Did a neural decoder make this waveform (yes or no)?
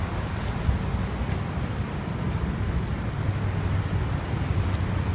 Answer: no